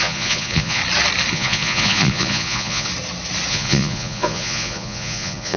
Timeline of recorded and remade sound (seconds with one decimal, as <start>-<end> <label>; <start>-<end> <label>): 0.0-0.8 remade; 0.8-1.3 recorded; 1.3-2.9 remade; 2.9-3.5 recorded; 3.5-5.6 remade